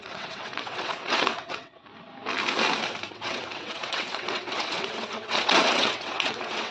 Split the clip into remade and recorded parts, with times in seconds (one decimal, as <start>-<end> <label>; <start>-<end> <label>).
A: 0.0-1.9 remade; 1.9-3.1 recorded; 3.1-6.7 remade